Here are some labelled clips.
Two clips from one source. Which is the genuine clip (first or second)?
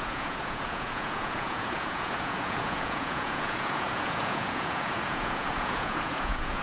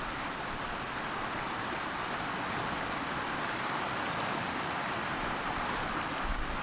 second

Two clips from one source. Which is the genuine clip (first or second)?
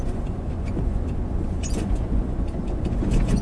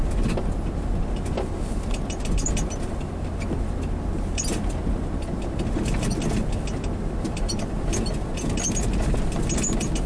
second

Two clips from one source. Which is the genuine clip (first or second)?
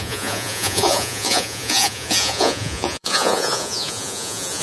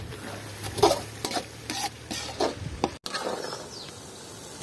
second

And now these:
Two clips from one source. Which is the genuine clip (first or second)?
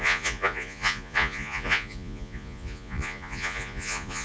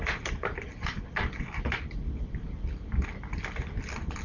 second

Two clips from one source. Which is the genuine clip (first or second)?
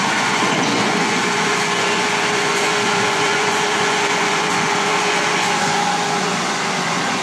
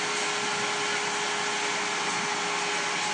second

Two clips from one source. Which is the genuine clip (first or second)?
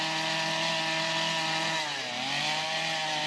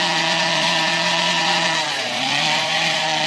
first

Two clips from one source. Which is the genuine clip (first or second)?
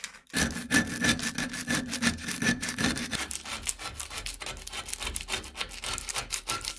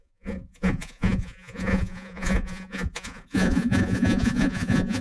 first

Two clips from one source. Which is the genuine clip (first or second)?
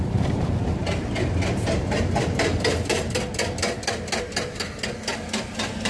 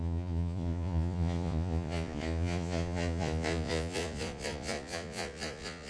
first